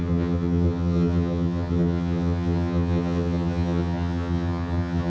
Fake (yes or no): yes